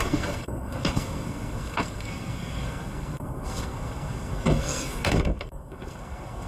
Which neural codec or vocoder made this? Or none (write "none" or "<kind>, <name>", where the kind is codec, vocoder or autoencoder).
codec, SNAC